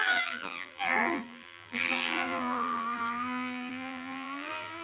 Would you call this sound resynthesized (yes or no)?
yes